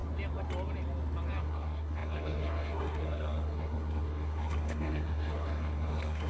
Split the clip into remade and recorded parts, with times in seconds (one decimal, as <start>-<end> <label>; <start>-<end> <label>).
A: 0.0-1.4 recorded; 1.4-6.3 remade